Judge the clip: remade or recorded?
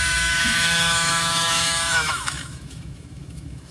remade